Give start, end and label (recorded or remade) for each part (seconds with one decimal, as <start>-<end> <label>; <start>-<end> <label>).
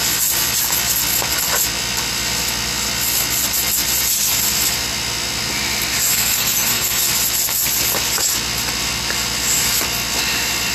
0.0-6.1 recorded; 6.1-7.1 remade; 7.1-10.7 recorded